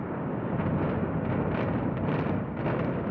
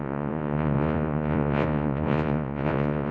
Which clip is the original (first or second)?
first